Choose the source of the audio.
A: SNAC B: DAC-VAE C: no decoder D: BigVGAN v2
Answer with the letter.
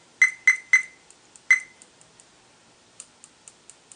C